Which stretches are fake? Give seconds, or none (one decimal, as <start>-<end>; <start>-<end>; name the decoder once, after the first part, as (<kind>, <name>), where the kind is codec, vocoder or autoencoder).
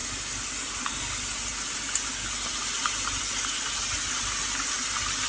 none